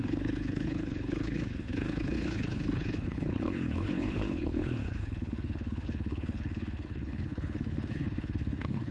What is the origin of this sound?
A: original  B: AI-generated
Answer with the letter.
B